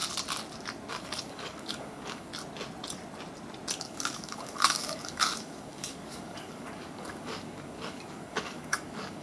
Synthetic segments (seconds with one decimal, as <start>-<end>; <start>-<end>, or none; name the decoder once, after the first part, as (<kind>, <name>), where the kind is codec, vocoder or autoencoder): 0.9-2.3 (codec, DAC); 3.8-9.2